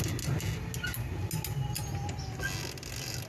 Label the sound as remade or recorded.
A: recorded